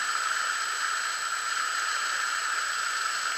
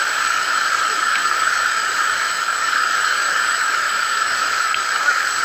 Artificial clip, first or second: second